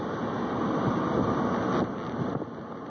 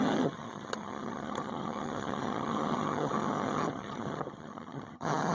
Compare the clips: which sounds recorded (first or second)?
first